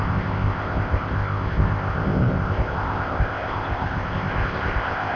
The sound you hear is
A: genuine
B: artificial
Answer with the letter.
B